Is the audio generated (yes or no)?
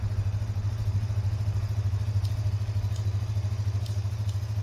no